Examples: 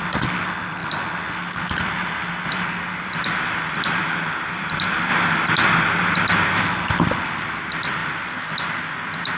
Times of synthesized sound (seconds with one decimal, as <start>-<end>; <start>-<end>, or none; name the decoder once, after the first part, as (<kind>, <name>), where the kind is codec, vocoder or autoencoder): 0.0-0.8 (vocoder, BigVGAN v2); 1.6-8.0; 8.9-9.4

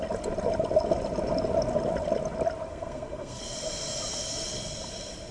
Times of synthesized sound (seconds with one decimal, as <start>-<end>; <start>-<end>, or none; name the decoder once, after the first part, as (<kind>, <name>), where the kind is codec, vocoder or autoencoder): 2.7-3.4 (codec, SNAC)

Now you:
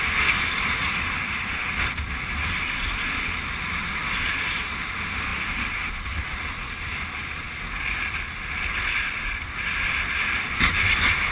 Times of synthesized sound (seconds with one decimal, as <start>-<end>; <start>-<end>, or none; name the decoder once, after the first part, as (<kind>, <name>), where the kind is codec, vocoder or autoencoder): none

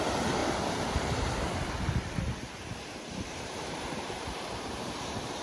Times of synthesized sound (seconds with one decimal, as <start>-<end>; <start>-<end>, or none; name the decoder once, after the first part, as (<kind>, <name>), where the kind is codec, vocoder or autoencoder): 0.0-0.4 (vocoder, BigVGAN v2); 3.4-5.4

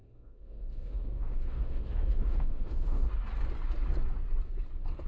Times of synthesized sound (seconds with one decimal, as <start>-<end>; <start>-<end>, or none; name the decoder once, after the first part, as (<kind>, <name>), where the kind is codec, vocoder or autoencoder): 0.0-3.1 (autoencoder, DAC-VAE)

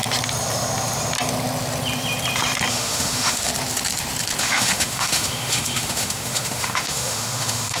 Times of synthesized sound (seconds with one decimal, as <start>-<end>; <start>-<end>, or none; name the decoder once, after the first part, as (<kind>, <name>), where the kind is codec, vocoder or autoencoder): 2.7-3.5 (autoencoder, DAC-VAE); 4.4-7.8

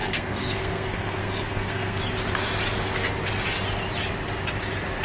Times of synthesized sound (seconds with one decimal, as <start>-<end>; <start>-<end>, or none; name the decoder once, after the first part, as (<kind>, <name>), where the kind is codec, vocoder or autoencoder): 0.0-2.0 (codec, SNAC)